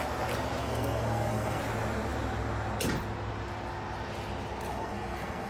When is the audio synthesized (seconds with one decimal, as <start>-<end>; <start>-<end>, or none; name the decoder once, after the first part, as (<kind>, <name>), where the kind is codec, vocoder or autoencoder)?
0.6-1.6 (codec, SNAC); 4.7-5.5